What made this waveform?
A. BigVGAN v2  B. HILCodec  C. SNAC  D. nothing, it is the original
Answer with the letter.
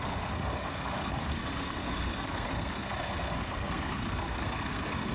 C